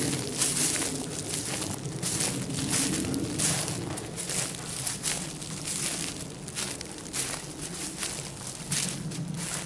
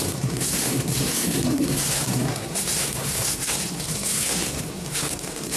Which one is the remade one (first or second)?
second